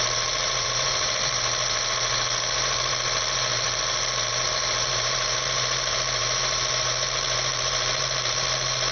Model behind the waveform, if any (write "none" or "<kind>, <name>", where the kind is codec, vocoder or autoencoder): vocoder, BigVGAN v2